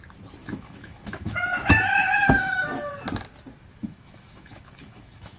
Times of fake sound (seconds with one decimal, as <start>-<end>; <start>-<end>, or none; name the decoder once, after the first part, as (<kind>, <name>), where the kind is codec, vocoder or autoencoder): 0.4-2.9 (autoencoder, DAC-VAE); 3.8-5.4